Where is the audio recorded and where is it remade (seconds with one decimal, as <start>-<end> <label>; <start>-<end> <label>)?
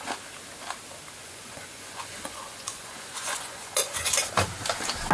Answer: 0.0-1.2 recorded; 1.2-4.3 remade; 4.3-5.1 recorded